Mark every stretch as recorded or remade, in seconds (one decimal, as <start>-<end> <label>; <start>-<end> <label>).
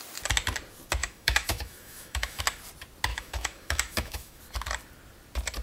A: 0.0-1.0 recorded; 1.0-2.4 remade; 2.4-3.1 recorded; 3.1-4.4 remade; 4.4-5.6 recorded